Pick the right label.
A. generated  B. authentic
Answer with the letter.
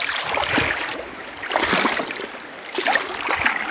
B